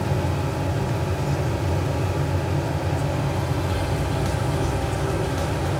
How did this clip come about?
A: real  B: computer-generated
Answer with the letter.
A